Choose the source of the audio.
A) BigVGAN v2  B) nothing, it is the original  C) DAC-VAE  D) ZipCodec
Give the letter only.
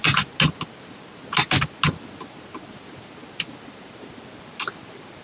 B